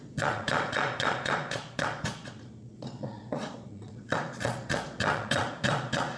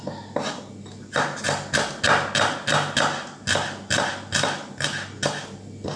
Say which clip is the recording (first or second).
second